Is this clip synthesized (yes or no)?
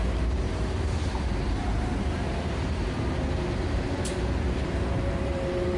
yes